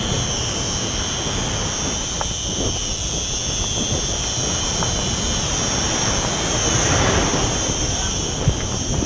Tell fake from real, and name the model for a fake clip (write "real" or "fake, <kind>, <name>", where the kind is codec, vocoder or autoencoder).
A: real